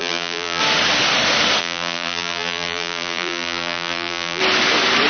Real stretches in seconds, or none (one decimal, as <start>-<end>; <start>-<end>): 0.6-1.6; 4.4-5.1